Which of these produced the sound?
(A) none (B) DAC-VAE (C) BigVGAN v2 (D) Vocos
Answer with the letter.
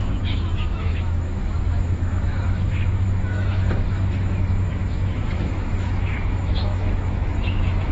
B